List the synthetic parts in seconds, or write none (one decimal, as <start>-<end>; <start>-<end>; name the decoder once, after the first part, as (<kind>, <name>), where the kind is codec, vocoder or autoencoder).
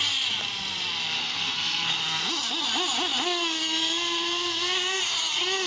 1.2-2.0 (codec, SNAC)